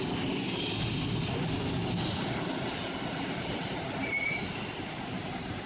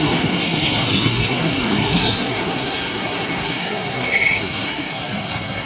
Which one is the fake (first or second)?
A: second